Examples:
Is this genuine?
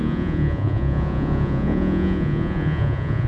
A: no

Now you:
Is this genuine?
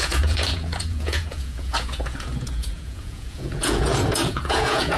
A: no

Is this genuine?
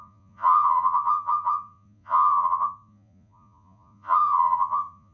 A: no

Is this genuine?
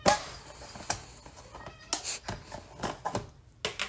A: yes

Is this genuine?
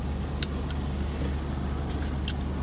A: yes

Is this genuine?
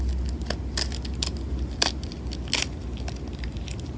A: yes